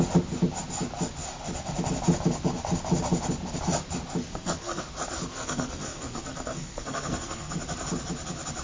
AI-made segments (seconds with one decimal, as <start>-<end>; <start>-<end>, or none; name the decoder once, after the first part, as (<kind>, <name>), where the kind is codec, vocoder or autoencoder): 4.3-4.8 (codec, SNAC); 5.3-7.6